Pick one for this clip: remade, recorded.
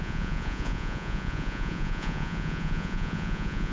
remade